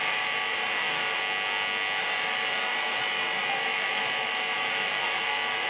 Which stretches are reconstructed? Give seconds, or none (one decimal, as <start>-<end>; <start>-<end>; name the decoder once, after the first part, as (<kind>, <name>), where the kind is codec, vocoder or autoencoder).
0.0-1.2 (autoencoder, DAC-VAE); 2.0-5.7